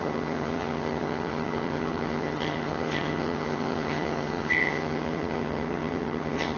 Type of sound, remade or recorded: remade